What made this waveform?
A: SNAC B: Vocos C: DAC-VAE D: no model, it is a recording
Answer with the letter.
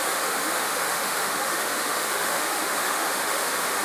C